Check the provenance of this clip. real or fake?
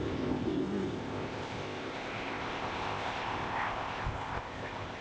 fake